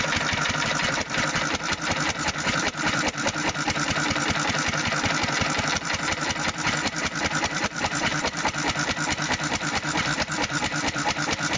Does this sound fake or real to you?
fake